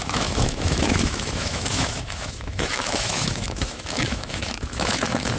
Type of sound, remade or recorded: remade